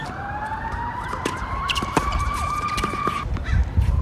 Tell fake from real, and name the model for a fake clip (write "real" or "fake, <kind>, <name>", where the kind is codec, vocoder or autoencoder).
fake, vocoder, BigVGAN v2